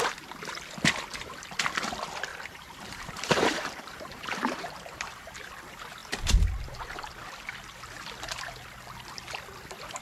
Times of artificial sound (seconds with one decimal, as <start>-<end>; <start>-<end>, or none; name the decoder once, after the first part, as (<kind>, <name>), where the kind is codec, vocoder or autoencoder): 2.3-5.5 (vocoder, BigVGAN v2)